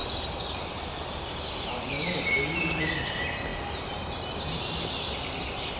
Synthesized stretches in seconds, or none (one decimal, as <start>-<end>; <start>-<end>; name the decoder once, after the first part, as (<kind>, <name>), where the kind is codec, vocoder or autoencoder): 0.0-3.0 (vocoder, BigVGAN v2)